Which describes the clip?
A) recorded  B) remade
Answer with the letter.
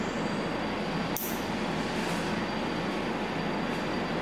A